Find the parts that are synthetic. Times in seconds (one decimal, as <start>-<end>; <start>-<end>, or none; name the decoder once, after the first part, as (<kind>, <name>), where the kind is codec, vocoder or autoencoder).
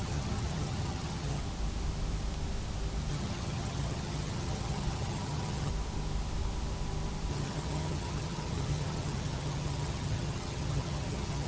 0.0-1.4 (vocoder, HiFi-GAN); 3.1-5.7; 7.3-11.5